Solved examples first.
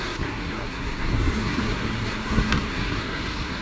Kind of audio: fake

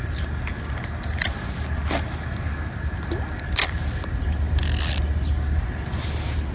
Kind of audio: real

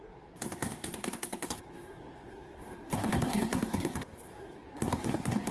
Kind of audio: fake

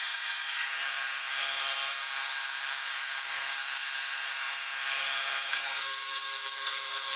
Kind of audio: fake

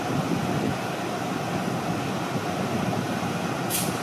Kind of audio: real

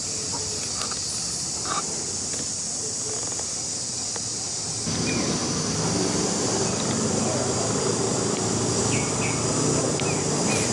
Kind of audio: real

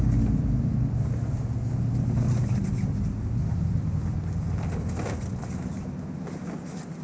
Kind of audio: real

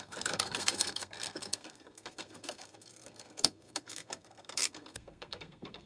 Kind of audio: fake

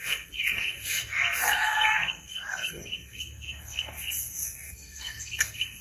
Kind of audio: fake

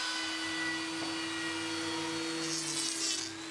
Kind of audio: real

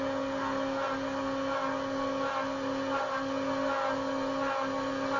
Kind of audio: real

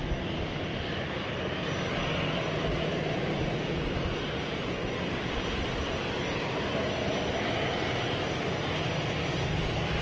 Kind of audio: real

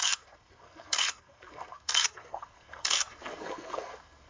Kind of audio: fake